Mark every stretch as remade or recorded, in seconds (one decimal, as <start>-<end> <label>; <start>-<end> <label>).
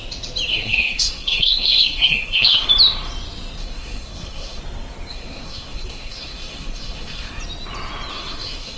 0.0-0.5 recorded; 0.5-2.7 remade; 2.7-3.6 recorded; 3.6-4.6 remade; 4.6-5.1 recorded; 5.1-7.3 remade; 7.3-8.1 recorded; 8.1-8.8 remade